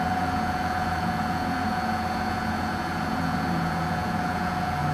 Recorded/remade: remade